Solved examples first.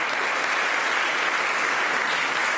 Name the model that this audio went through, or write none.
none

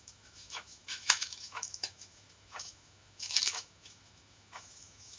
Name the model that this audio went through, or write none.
autoencoder, DAC-VAE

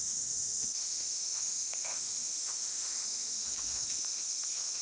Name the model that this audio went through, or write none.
autoencoder, DAC-VAE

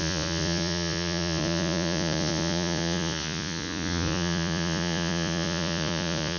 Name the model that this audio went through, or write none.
vocoder, Vocos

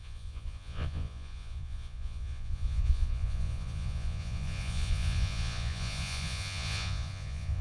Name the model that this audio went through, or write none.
vocoder, Vocos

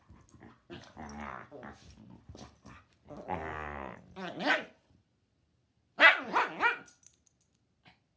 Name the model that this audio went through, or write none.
none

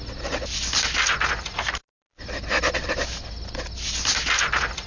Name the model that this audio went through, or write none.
none